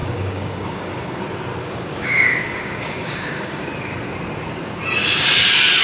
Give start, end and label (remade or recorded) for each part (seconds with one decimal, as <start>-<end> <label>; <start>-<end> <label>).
0.0-1.2 remade; 1.2-1.6 recorded; 1.6-3.6 remade; 3.6-5.8 recorded